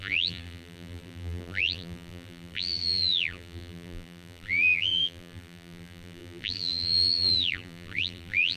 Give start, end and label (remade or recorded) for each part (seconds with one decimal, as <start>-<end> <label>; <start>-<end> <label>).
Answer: 0.0-8.6 remade